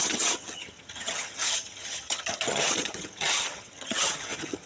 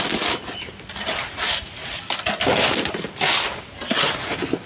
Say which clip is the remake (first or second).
first